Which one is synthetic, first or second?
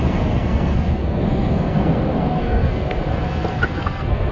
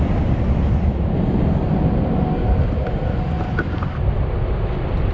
first